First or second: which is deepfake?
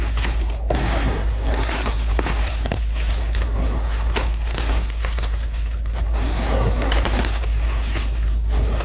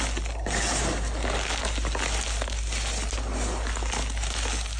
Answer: first